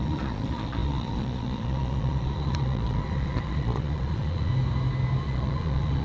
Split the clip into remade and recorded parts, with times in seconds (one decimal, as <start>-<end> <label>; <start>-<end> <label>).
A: 0.0-4.5 remade; 4.5-5.2 recorded; 5.2-6.0 remade